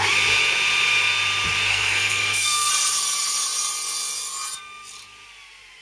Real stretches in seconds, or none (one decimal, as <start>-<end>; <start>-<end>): 0.0-1.7; 2.7-5.8